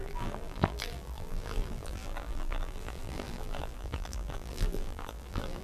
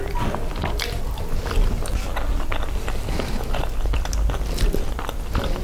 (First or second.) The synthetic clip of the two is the first